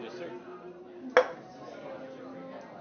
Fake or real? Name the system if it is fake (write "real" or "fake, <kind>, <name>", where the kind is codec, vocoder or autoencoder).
real